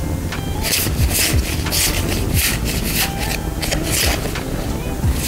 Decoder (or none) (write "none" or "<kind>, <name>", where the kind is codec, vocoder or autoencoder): none